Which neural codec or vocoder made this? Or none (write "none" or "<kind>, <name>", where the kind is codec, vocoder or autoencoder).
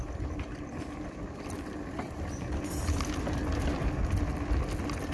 none